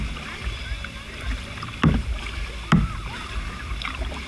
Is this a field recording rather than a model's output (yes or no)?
yes